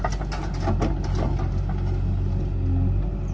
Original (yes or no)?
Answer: yes